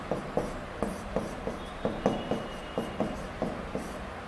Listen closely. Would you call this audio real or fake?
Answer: fake